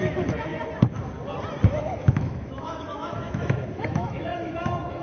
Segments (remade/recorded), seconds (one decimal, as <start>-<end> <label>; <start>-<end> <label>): 0.0-0.5 remade; 0.5-1.8 recorded; 1.8-5.0 remade